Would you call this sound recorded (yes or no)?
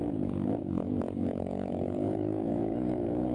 no